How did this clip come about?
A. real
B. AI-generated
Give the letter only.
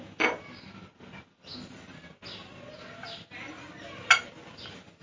A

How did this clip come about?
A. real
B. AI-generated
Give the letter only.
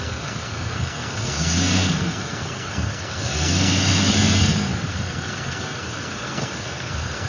B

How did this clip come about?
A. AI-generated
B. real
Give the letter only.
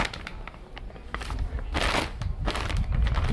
B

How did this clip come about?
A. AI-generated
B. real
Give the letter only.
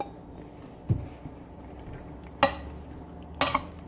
B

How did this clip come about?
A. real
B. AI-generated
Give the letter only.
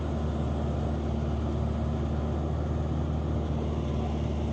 A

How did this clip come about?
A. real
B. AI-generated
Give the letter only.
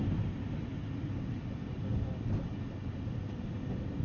A